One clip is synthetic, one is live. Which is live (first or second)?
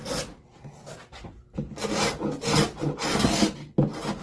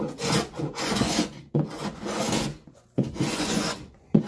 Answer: first